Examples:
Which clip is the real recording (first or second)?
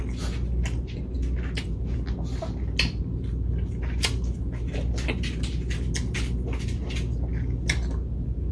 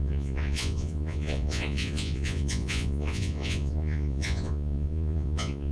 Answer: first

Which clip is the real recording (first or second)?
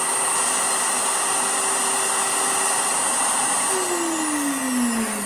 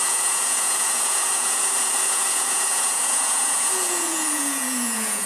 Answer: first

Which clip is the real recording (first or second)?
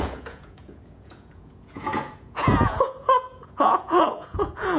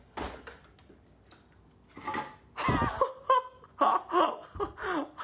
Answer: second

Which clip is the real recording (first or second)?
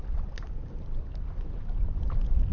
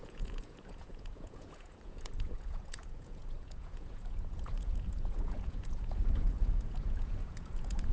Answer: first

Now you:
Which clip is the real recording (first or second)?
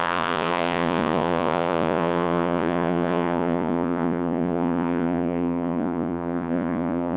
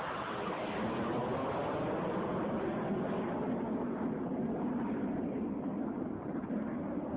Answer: second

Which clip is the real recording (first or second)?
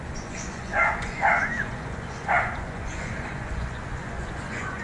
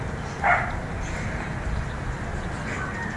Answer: second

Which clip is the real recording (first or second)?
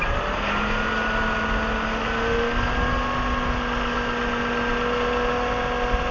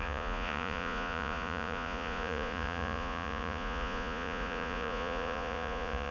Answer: first